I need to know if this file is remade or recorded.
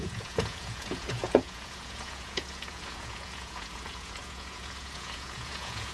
remade